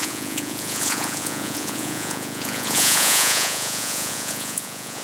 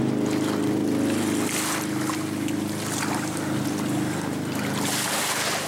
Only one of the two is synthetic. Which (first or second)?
first